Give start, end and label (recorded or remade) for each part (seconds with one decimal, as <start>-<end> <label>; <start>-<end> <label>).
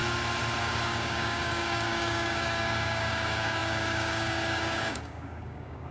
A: 0.0-0.6 recorded; 0.6-5.9 remade